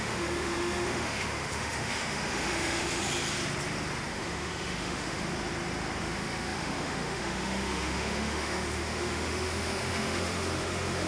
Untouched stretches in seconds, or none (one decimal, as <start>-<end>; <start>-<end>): 3.0-4.1; 5.3-6.0